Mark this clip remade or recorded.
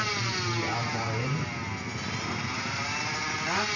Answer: recorded